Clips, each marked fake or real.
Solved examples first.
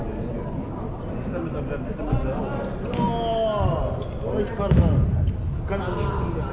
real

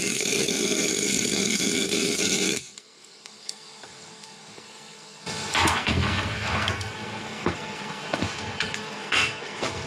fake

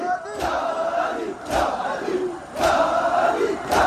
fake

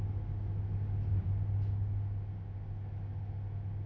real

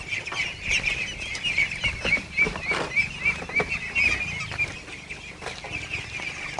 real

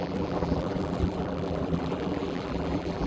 fake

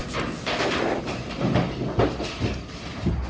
real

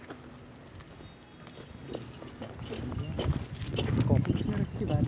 real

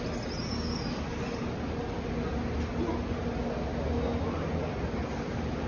real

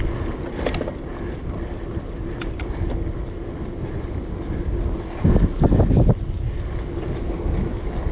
real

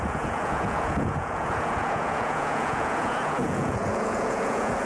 fake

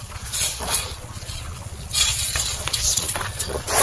fake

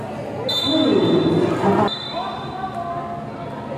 real